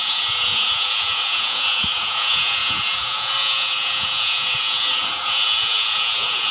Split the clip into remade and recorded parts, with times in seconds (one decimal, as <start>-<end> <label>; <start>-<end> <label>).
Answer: 0.0-6.5 remade